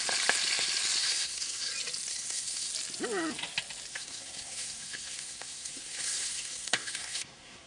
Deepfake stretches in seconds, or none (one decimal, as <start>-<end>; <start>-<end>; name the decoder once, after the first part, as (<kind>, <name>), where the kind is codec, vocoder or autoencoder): 1.0-1.7 (codec, SNAC); 2.1-2.7; 3.9-7.7